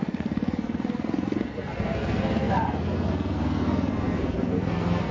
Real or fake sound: fake